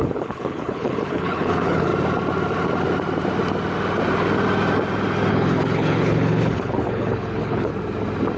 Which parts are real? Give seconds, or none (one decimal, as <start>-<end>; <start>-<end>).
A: 1.9-5.3; 7.7-8.4